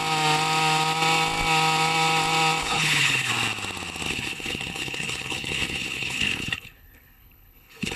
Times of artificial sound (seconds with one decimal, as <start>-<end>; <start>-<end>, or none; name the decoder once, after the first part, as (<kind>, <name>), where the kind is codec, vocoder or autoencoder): 2.6-3.3 (codec, HILCodec); 4.1-8.0